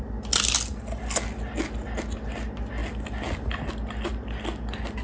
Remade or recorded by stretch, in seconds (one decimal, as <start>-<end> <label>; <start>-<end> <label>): 0.0-5.0 recorded